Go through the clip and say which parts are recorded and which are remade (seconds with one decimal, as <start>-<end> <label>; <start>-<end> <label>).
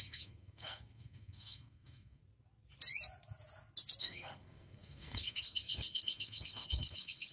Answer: 0.0-2.2 remade; 2.2-4.0 recorded; 4.0-7.3 remade